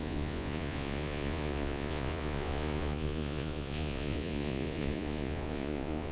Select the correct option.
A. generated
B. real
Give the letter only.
A